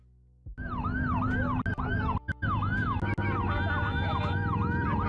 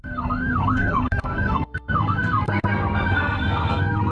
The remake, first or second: second